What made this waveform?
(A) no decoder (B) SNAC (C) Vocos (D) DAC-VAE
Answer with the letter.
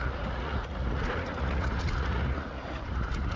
C